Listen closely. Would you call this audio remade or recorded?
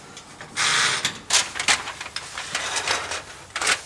recorded